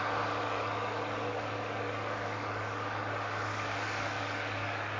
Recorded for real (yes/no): no